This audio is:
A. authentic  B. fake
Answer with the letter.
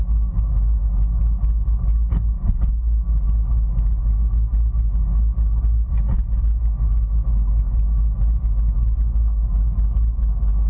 A